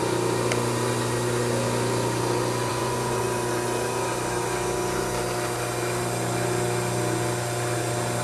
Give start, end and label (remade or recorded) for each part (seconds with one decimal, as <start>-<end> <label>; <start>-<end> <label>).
0.0-2.7 recorded; 2.7-3.2 remade; 3.2-8.2 recorded